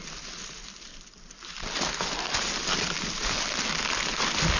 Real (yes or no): yes